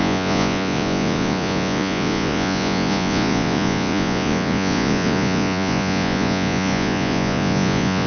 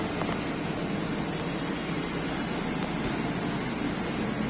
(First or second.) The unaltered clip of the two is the second